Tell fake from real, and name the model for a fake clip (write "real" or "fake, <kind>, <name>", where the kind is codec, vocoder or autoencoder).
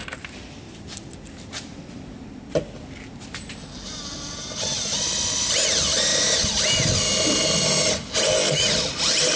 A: real